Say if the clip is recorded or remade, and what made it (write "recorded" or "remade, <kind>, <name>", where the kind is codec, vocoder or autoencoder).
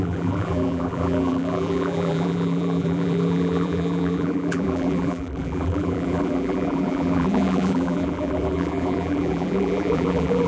remade, vocoder, BigVGAN v2